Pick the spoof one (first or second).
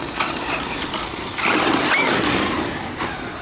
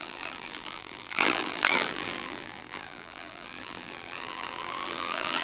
second